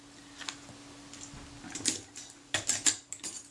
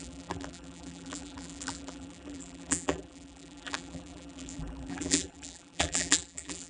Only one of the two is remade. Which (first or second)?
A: second